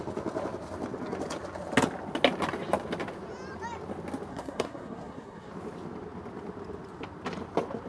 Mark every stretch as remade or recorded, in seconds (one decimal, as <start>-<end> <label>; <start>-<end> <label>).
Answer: 0.0-4.3 recorded; 4.3-5.5 remade; 5.5-7.9 recorded